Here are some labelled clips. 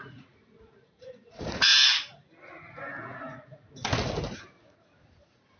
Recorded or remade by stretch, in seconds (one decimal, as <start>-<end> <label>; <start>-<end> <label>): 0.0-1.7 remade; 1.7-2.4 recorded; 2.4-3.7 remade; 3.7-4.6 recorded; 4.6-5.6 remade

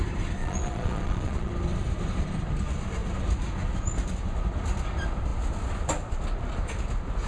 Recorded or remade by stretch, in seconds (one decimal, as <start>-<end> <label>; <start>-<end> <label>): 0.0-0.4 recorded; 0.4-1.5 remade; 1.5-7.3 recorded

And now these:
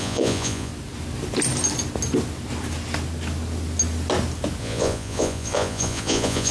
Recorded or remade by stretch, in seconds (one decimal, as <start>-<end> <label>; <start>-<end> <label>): 0.0-0.7 remade; 0.7-4.6 recorded; 4.6-6.5 remade